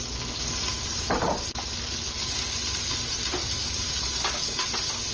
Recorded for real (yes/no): yes